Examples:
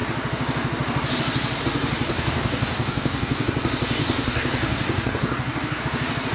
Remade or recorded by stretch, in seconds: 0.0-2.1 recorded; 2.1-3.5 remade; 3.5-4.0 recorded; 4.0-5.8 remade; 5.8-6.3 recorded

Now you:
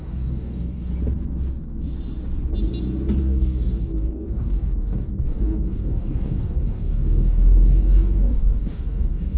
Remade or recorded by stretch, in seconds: 0.0-0.9 remade; 0.9-1.5 recorded; 1.5-1.9 remade; 1.9-3.2 recorded; 3.2-9.4 remade

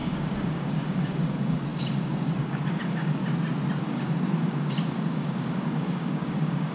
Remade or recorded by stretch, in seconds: 0.0-3.2 remade; 3.2-3.8 recorded; 3.8-6.7 remade

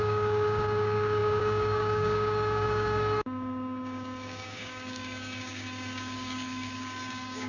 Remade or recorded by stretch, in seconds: 0.0-7.5 remade

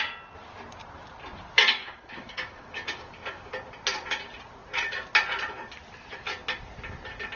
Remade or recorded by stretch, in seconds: 0.0-1.8 recorded; 1.8-3.5 remade; 3.5-7.4 recorded